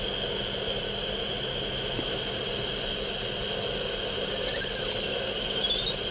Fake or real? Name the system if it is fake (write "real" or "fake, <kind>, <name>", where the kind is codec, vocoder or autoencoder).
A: real